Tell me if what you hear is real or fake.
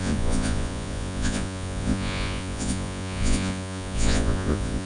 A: fake